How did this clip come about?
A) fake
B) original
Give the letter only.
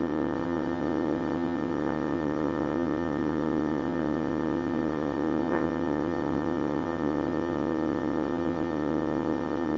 A